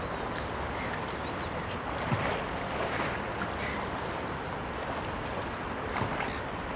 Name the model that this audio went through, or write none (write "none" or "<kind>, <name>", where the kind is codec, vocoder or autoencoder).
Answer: none